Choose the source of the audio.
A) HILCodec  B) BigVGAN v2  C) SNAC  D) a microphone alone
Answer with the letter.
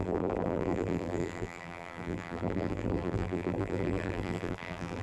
B